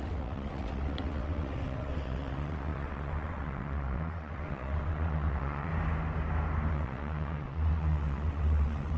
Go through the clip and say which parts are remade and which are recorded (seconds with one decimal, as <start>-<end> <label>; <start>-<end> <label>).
0.0-5.7 remade; 5.7-6.7 recorded; 6.7-9.0 remade